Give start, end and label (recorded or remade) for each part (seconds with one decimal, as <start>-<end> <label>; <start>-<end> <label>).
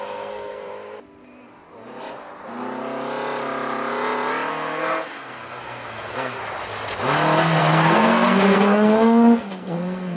0.0-0.7 remade; 0.7-4.5 recorded; 4.5-6.4 remade; 6.4-7.6 recorded; 7.6-10.2 remade